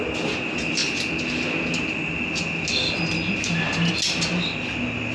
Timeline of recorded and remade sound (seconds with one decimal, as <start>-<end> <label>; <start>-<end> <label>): 0.0-5.1 recorded